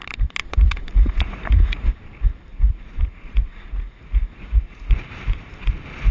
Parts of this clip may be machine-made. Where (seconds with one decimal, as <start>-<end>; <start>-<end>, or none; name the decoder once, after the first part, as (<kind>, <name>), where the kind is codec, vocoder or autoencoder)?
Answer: 0.4-1.9 (vocoder, Vocos); 2.5-4.9